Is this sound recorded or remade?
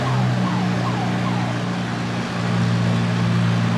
recorded